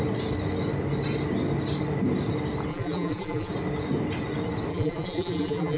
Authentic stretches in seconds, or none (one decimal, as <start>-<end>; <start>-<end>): 0.0-2.7; 3.5-4.7